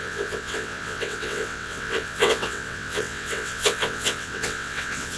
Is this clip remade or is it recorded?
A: remade